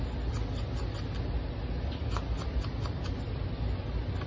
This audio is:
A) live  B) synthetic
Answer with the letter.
A